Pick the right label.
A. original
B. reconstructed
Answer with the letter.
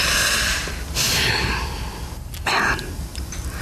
A